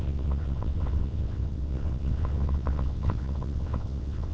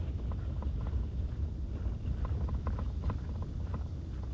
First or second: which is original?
second